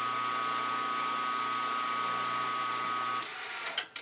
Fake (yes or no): no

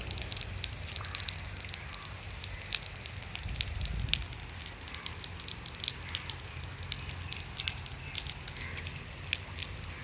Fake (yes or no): no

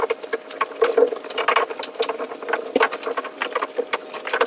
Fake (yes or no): no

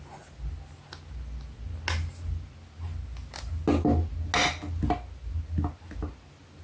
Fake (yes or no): no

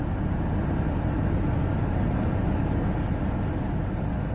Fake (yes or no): no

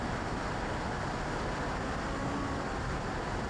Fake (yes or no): no